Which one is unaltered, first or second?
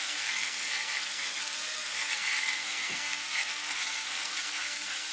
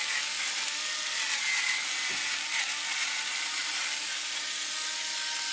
second